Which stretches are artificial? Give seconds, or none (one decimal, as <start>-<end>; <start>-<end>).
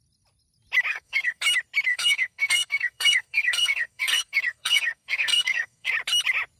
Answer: 0.9-1.4; 1.9-5.9